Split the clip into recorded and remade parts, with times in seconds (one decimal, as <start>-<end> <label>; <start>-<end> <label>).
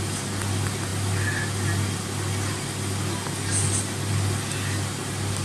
0.0-5.4 recorded